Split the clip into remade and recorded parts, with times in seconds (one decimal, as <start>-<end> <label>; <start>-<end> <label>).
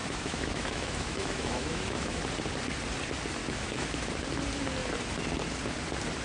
0.0-2.2 remade; 2.2-3.4 recorded; 3.4-4.1 remade; 4.1-6.2 recorded